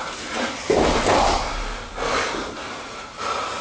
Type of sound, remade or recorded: remade